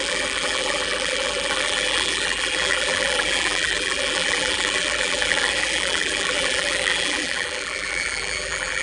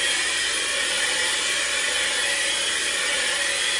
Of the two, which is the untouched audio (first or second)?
second